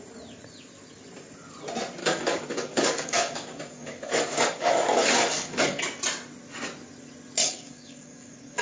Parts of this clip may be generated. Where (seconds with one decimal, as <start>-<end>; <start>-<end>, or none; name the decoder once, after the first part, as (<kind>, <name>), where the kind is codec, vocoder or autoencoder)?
2.0-5.8 (codec, DAC); 7.4-8.6